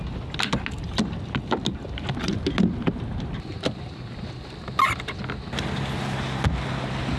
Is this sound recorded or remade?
recorded